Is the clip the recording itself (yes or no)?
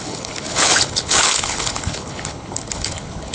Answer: no